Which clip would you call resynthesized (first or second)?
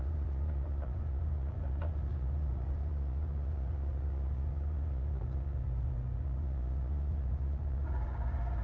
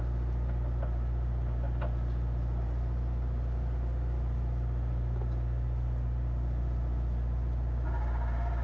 first